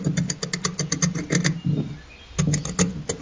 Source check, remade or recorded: recorded